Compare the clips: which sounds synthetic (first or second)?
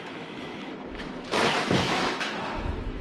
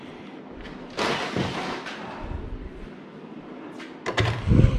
first